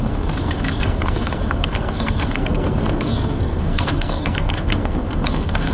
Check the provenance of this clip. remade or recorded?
remade